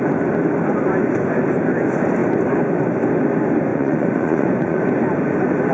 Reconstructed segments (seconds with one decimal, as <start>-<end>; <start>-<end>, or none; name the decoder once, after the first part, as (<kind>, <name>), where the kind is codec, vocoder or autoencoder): 3.7-4.8 (vocoder, Vocos)